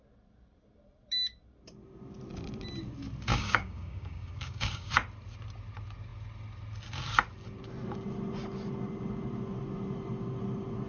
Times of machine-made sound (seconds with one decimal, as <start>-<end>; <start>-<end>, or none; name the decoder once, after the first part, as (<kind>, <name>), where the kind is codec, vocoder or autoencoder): 3.3-4.9 (codec, DAC)